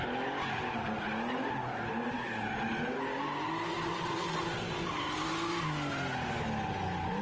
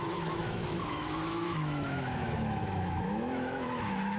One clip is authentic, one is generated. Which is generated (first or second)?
second